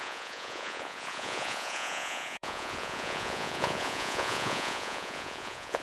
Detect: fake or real fake